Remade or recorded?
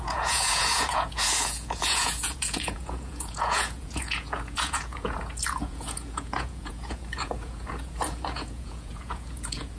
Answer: remade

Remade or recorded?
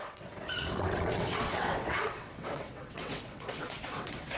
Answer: remade